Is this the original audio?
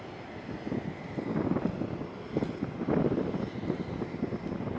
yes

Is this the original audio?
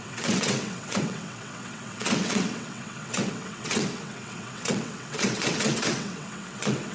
no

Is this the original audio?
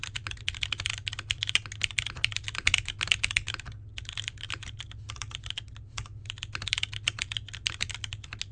yes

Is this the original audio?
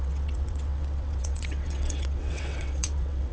no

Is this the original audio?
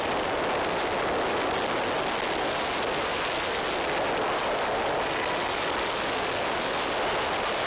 yes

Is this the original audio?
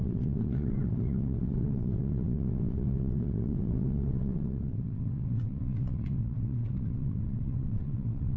no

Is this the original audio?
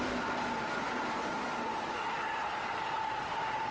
yes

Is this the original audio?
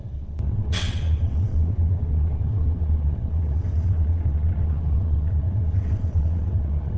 no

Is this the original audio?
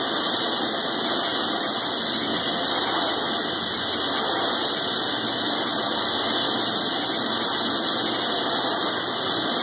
yes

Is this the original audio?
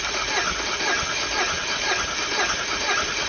yes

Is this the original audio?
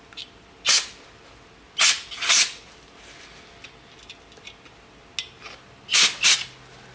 yes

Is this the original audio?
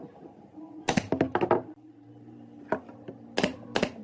yes